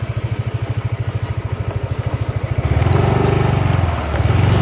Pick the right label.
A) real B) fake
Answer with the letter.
A